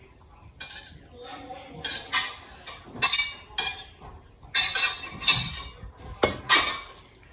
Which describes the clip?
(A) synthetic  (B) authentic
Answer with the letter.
B